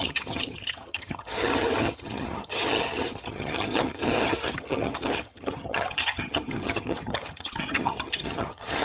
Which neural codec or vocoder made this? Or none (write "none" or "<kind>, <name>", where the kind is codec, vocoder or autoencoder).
vocoder, HiFi-GAN